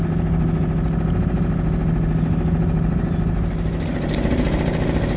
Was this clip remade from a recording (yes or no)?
no